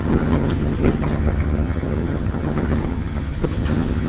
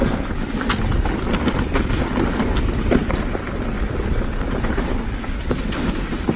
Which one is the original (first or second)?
second